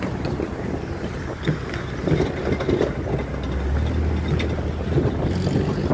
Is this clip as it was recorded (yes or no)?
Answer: yes